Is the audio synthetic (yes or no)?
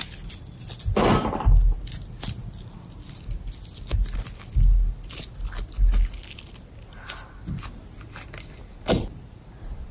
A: no